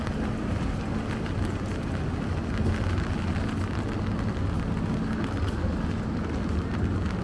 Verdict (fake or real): real